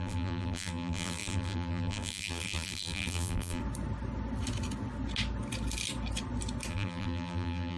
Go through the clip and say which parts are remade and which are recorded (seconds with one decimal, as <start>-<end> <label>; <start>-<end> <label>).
0.0-3.6 remade; 3.6-6.7 recorded; 6.7-7.8 remade